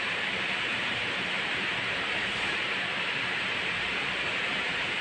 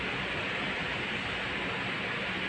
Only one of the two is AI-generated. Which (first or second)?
first